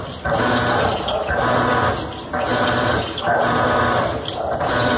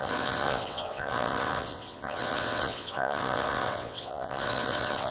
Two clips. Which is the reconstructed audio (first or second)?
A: second